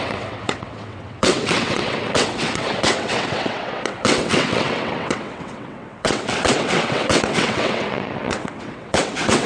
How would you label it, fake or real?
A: fake